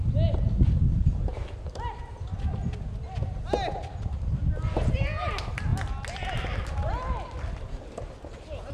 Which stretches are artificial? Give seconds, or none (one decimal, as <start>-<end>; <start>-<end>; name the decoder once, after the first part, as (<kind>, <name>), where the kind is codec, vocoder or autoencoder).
none

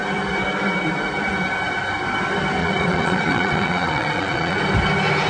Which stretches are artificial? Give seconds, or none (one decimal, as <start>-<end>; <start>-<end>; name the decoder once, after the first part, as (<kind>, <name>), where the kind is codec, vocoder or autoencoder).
2.6-4.6 (vocoder, Vocos)

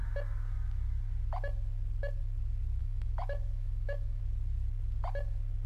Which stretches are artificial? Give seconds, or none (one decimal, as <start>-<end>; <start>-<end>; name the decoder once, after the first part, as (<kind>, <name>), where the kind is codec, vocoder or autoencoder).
2.8-4.2 (autoencoder, DAC-VAE)

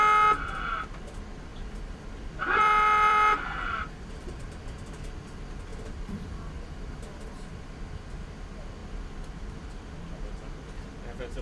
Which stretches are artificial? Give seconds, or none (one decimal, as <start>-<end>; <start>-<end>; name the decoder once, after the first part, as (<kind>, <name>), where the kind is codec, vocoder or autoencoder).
1.5-4.6 (vocoder, BigVGAN v2); 5.7-7.6